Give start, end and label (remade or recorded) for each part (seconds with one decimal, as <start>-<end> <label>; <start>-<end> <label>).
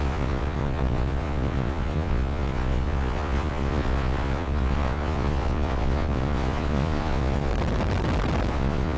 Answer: 0.0-7.5 remade; 7.5-8.5 recorded; 8.5-9.0 remade